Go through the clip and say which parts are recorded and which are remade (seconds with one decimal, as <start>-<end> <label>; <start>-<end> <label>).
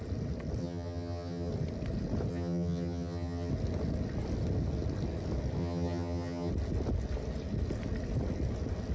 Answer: 0.0-0.6 recorded; 0.6-1.5 remade; 1.5-2.3 recorded; 2.3-3.5 remade; 3.5-5.6 recorded; 5.6-6.5 remade; 6.5-8.9 recorded